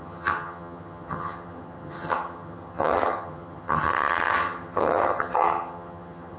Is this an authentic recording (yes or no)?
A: no